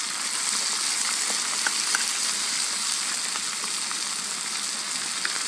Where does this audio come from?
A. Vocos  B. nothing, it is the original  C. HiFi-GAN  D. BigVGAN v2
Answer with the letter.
B